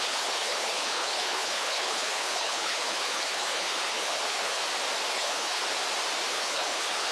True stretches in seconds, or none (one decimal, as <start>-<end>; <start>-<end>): 4.6-5.1; 5.6-6.3